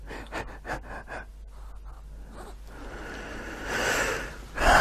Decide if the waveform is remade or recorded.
recorded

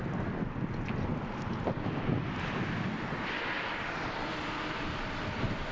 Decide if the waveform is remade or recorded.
recorded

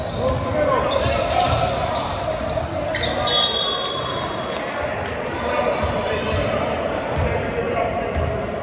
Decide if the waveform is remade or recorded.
recorded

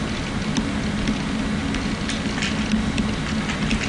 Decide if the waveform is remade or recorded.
recorded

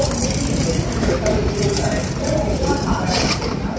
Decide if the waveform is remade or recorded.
recorded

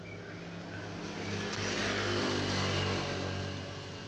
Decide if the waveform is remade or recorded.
recorded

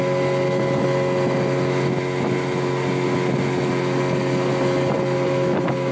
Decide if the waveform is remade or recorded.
recorded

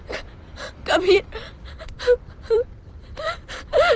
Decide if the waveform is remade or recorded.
remade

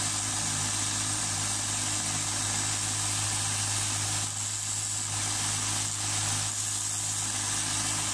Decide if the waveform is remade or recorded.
recorded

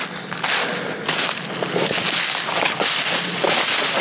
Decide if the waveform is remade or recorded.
recorded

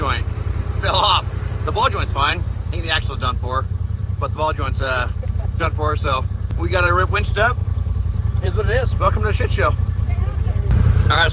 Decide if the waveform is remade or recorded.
remade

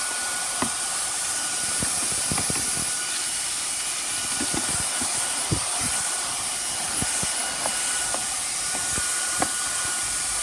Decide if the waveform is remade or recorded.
remade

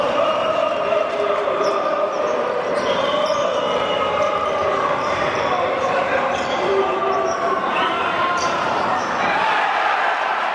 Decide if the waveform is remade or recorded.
remade